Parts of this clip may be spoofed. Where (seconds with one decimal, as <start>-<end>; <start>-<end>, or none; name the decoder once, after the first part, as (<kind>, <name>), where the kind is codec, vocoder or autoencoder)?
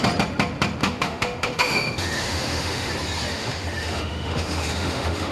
0.8-2.9 (autoencoder, DAC-VAE); 3.3-5.3